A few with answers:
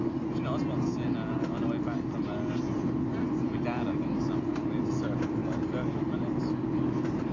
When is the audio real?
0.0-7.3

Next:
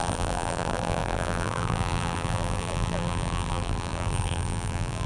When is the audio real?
none

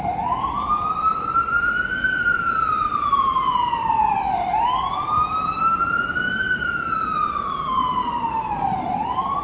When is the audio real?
1.1-2.1

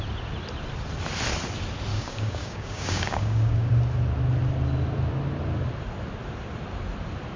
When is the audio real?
0.0-1.9; 3.7-7.4

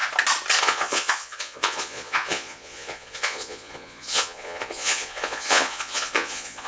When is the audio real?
0.0-0.6

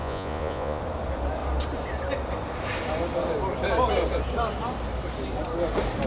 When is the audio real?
0.8-6.1

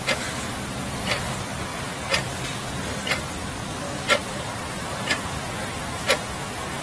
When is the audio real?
3.4-4.2